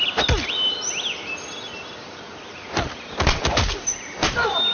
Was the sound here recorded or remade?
recorded